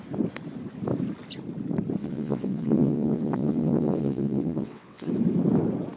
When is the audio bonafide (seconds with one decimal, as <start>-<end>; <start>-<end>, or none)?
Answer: 0.0-2.0; 5.1-6.0